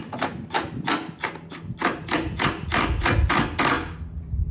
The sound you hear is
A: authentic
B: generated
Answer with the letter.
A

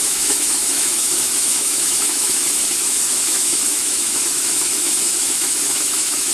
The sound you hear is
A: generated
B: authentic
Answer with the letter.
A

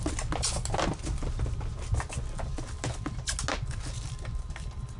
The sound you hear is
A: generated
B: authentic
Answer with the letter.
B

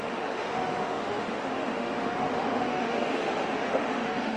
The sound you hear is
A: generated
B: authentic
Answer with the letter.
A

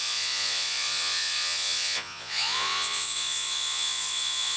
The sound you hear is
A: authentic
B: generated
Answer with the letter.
B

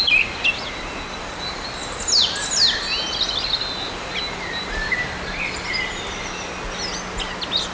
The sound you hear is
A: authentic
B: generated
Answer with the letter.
A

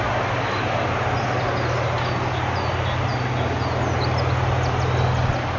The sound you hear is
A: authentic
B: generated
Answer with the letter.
A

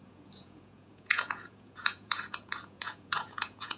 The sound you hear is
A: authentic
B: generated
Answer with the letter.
B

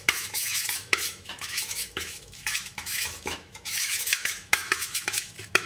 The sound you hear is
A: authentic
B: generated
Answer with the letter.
B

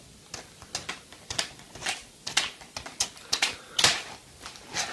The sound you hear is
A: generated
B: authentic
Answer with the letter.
B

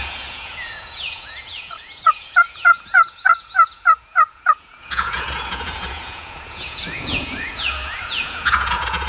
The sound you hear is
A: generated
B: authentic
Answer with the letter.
A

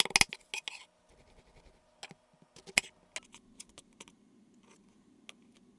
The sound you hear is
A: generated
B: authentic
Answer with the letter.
B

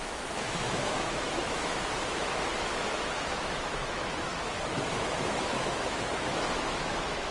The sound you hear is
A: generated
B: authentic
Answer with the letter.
A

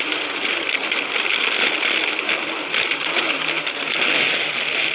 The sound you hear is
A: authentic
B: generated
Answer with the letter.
A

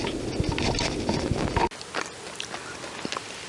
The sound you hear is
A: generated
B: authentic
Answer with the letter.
B